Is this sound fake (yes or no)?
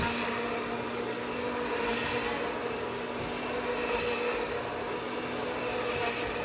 no